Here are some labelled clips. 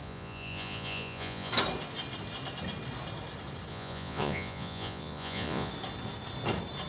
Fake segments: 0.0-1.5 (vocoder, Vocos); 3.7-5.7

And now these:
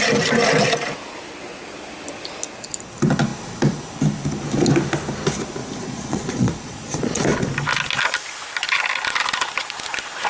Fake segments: 5.6-7.2 (vocoder, Vocos)

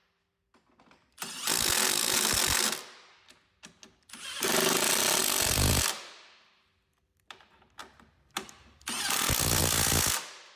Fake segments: none

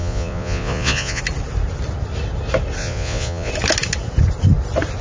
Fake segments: 0.0-1.2 (vocoder, Vocos); 2.8-3.5

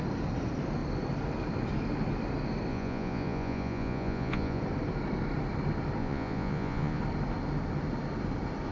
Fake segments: 2.7-4.6 (vocoder, Vocos); 6.0-7.0

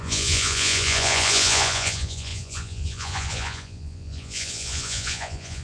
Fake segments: 0.0-5.6 (vocoder, Vocos)

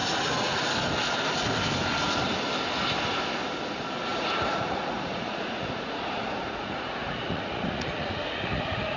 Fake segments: 0.0-0.6 (vocoder, Vocos); 4.1-9.0